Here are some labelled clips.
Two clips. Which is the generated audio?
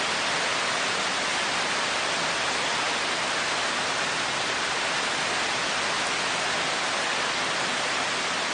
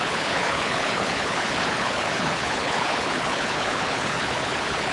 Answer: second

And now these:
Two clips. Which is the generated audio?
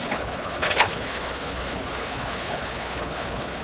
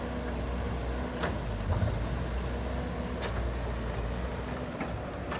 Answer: first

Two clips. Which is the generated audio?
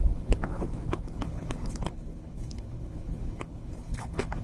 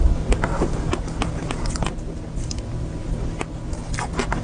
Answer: first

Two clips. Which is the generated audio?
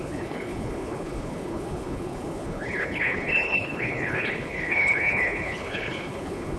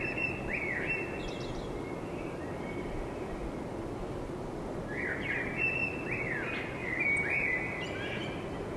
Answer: first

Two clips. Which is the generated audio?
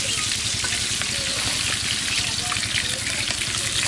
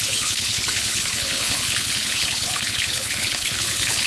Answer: second